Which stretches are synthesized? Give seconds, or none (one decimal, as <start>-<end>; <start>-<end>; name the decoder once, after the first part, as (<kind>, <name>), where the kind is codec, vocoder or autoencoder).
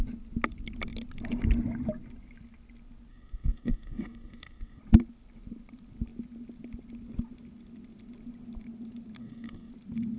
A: 3.1-4.8 (codec, SNAC); 9.2-9.7